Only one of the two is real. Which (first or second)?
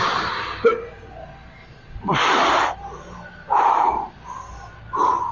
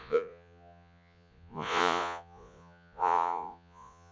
first